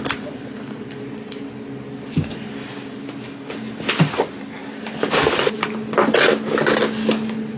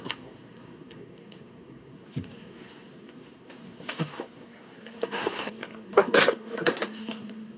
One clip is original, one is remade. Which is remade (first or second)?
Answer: second